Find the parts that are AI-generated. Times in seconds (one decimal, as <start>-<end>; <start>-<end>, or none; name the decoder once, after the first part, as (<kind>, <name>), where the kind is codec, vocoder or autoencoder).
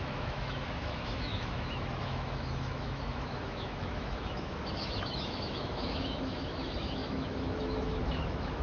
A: 0.0-8.6 (autoencoder, DAC-VAE)